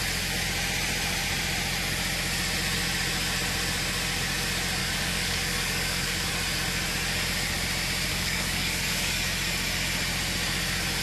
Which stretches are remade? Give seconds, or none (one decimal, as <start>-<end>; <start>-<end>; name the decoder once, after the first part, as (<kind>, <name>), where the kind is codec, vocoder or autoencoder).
4.8-6.3 (codec, DAC); 8.1-9.2